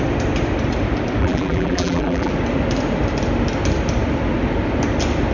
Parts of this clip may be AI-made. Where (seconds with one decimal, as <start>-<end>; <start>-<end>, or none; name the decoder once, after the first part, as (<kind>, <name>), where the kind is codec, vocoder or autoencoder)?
1.2-2.3 (vocoder, BigVGAN v2)